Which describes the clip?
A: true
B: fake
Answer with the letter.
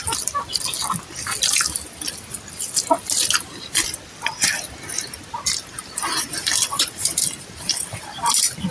A